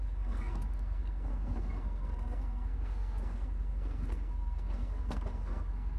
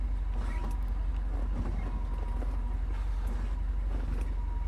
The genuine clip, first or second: second